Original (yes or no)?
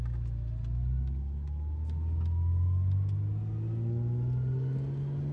yes